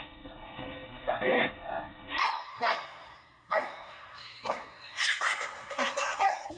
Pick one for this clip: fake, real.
fake